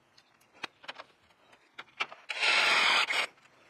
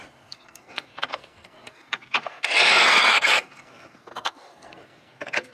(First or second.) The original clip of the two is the first